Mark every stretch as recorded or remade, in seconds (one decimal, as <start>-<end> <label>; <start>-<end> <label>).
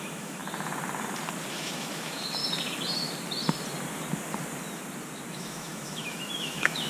0.0-0.4 remade; 0.4-1.5 recorded; 1.5-2.4 remade; 2.4-5.3 recorded; 5.3-6.9 remade